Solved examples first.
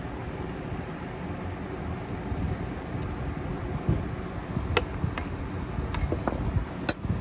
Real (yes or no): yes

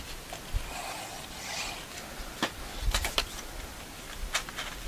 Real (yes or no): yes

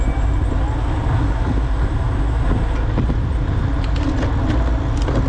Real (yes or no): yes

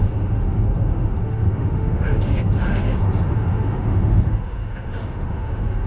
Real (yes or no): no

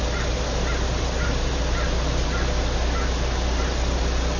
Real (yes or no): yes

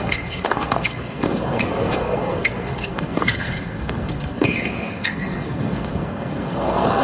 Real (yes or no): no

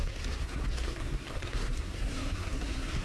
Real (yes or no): no